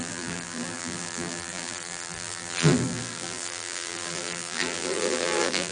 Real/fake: fake